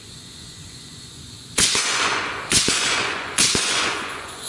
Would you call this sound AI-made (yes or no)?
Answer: yes